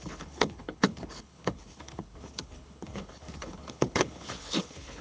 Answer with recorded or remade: remade